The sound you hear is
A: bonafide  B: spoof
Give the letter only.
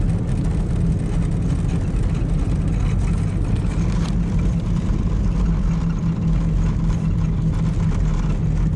A